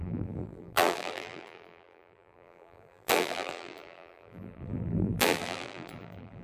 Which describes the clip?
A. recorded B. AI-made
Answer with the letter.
B